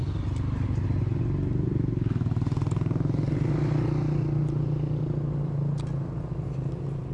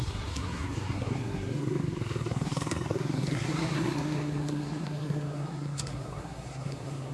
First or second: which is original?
first